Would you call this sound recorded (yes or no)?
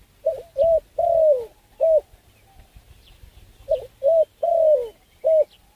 yes